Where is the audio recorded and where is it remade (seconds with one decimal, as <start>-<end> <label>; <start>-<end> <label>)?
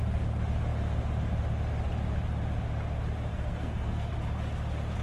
0.0-3.3 recorded; 3.3-4.1 remade; 4.1-5.0 recorded